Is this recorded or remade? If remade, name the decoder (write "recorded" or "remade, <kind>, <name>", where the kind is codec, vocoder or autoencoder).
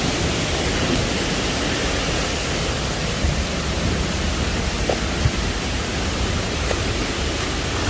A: recorded